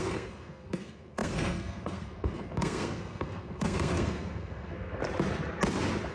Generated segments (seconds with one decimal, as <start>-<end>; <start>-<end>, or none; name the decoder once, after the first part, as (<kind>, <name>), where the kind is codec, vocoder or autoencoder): 0.0-5.0 (codec, SNAC)